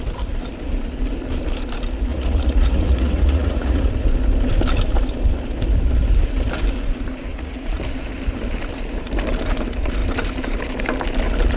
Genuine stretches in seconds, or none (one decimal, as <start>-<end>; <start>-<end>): 0.0-2.1; 3.9-7.3; 7.8-11.6